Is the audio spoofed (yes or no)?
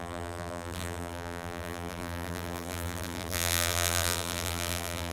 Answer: yes